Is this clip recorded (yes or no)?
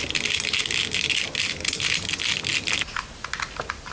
yes